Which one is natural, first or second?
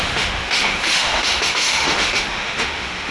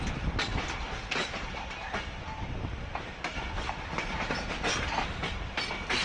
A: second